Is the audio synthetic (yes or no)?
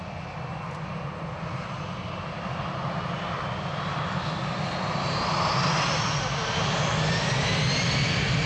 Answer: no